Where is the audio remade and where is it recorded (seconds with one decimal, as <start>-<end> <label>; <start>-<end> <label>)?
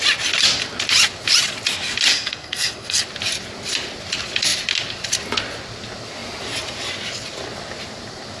0.0-2.1 recorded; 2.1-3.0 remade; 3.0-8.4 recorded